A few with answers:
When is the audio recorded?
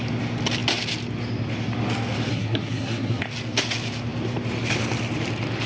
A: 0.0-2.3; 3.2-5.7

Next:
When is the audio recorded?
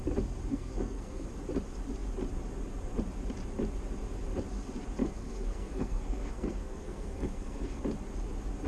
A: 0.0-0.5; 1.3-5.0; 7.8-8.7